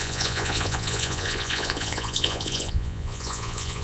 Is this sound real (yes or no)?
no